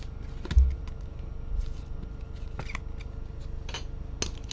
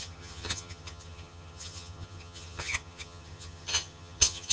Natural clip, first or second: first